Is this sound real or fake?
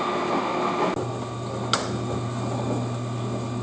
real